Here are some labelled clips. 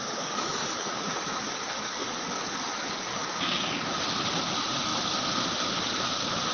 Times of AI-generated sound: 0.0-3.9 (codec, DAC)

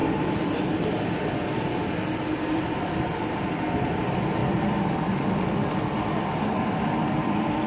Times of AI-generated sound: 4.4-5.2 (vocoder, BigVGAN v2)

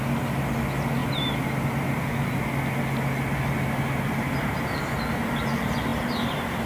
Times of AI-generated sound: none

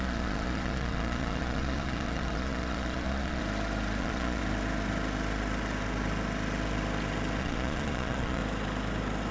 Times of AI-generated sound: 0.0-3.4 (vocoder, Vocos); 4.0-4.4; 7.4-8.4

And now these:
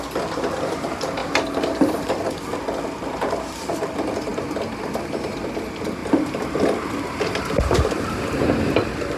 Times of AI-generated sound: 1.2-2.3 (vocoder, BigVGAN v2); 6.0-8.4

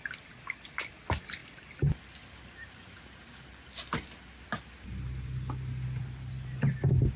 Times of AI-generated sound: 1.4-2.0 (vocoder, BigVGAN v2)